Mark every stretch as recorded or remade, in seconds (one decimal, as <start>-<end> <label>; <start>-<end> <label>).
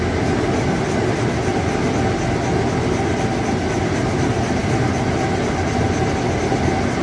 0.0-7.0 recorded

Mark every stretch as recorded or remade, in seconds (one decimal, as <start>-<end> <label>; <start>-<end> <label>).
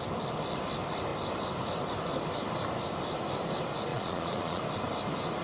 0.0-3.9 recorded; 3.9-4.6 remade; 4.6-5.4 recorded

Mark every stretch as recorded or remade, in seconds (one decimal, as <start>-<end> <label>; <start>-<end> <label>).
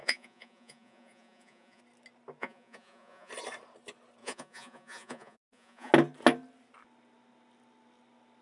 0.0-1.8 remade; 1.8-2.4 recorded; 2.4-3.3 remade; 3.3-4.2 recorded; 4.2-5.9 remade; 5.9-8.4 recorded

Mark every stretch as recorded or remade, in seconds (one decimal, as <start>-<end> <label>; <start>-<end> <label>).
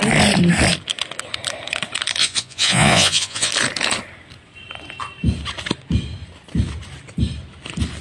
0.0-2.2 recorded; 2.2-3.5 remade; 3.5-8.0 recorded